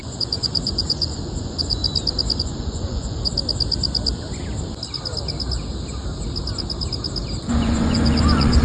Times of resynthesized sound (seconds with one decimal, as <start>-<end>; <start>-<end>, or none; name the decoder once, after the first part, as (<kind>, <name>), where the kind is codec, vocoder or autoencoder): 0.0-1.8 (vocoder, Vocos); 2.4-3.3; 7.4-8.6